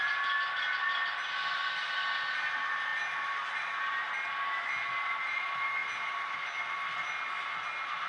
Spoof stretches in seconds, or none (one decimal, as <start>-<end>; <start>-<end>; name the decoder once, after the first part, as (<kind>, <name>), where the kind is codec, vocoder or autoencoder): 0.0-5.8 (vocoder, BigVGAN v2)